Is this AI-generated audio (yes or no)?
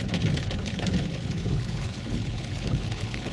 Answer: yes